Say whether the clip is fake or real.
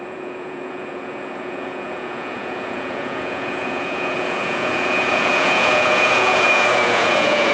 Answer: fake